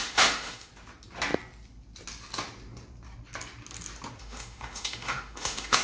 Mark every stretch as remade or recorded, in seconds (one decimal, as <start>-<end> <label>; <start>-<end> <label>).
0.0-0.7 remade; 0.7-4.2 recorded; 4.2-5.8 remade